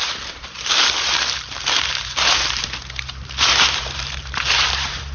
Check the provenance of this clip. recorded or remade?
remade